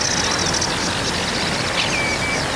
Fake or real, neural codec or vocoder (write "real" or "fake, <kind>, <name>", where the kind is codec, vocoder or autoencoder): real